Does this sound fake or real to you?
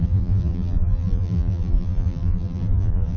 fake